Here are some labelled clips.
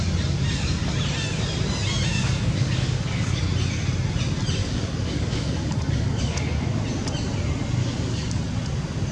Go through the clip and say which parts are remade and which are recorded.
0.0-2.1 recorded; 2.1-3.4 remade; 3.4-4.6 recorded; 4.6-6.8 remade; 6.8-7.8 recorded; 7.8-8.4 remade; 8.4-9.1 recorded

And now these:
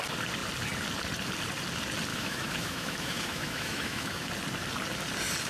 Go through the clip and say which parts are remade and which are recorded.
0.0-2.1 recorded; 2.1-4.3 remade; 4.3-5.5 recorded